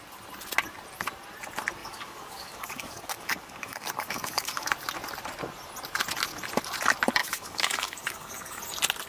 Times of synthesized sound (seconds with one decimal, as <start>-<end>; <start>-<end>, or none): 1.8-4.7; 7.2-8.6